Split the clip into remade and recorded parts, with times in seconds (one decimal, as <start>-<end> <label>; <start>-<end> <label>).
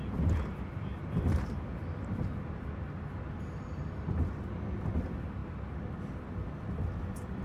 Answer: 0.0-0.9 recorded; 0.9-1.8 remade; 1.8-7.4 recorded